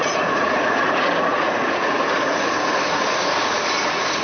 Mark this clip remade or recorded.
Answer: remade